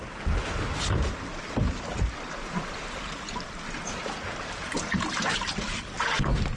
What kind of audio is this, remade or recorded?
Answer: recorded